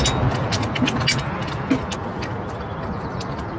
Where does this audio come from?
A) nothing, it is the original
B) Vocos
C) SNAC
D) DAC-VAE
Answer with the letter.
A